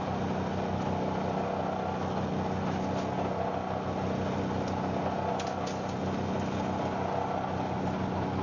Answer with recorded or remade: recorded